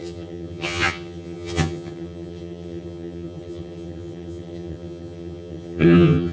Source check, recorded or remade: remade